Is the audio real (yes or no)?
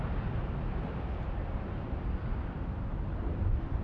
yes